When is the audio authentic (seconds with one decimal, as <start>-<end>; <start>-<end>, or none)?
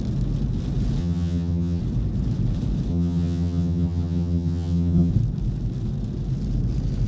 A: 0.0-1.0; 1.8-2.9; 5.1-7.1